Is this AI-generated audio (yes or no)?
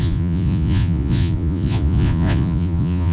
yes